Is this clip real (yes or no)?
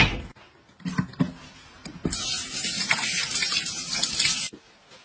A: yes